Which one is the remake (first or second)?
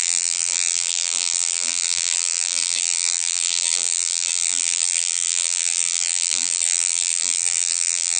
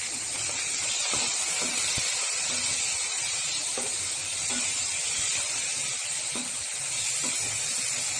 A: first